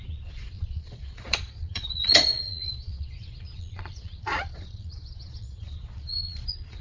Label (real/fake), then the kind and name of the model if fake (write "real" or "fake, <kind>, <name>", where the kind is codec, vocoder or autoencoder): fake, vocoder, Vocos